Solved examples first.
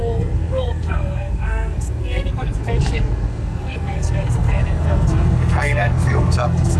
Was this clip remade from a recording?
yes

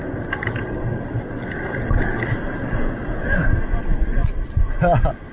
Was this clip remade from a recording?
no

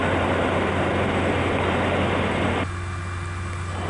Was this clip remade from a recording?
no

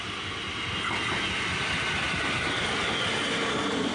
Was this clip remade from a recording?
no